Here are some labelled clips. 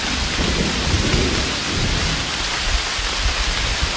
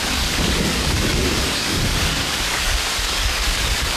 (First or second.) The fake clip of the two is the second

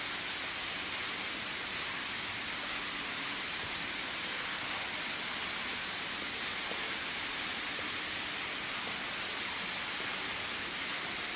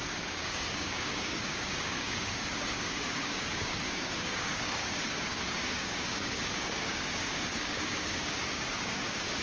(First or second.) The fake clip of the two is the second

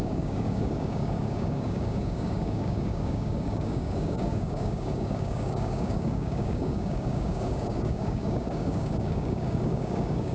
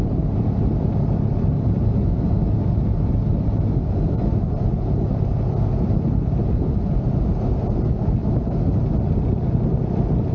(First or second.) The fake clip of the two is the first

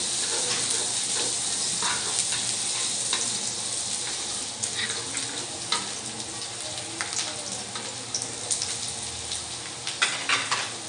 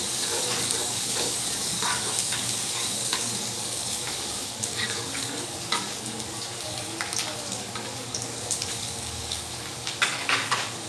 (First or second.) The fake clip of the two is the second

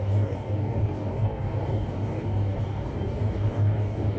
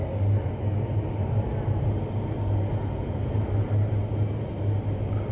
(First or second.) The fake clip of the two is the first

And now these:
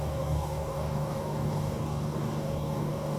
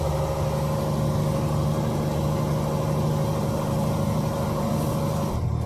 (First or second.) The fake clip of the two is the first